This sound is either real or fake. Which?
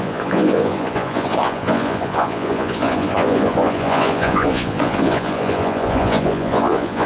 fake